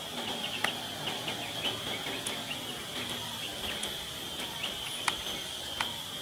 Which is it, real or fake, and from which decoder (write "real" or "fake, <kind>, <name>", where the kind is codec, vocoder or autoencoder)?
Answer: real